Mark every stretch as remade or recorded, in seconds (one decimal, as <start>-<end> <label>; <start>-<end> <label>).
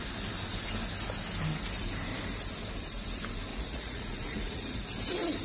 0.0-3.5 recorded; 3.5-4.8 remade; 4.8-5.4 recorded